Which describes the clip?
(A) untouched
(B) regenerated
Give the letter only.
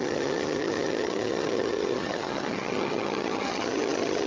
B